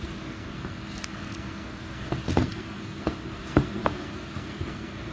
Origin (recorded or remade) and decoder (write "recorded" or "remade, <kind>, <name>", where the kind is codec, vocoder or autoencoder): remade, codec, SNAC